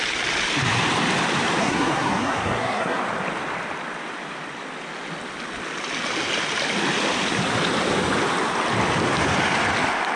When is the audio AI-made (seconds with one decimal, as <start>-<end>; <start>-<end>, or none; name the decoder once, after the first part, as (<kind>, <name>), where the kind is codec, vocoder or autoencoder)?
1.6-3.0 (codec, SNAC)